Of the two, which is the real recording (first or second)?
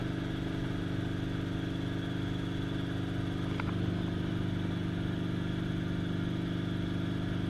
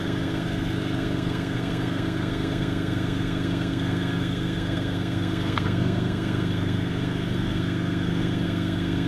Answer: first